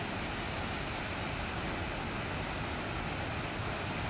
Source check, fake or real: real